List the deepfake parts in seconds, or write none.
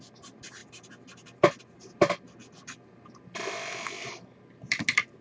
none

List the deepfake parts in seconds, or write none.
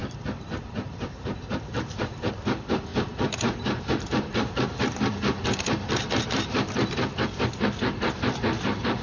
0.0-2.3 (vocoder, BigVGAN v2); 2.9-5.0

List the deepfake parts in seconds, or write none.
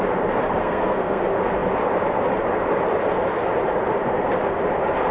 0.6-1.2 (codec, SNAC)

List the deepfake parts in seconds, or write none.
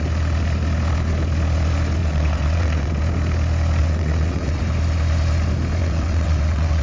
2.0-3.0 (vocoder, WaveNeXt); 3.8-4.6; 5.8-6.8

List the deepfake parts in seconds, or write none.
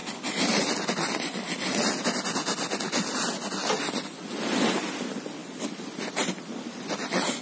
none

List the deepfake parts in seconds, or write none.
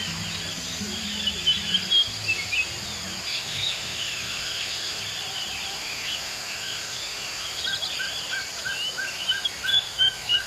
3.3-5.0 (autoencoder, DAC-VAE); 5.7-7.6; 9.7-10.5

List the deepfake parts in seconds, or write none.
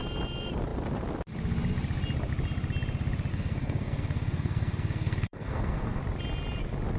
3.3-6.0 (codec, SNAC)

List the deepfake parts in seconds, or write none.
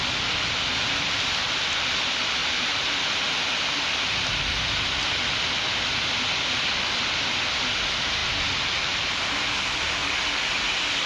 2.4-2.9 (vocoder, BigVGAN v2)